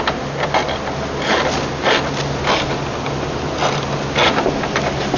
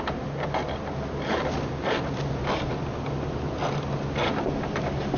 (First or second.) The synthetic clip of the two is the second